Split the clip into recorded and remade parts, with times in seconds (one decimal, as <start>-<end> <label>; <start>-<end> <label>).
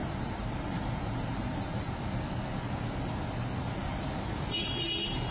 0.0-1.8 remade; 1.8-3.9 recorded; 3.9-5.3 remade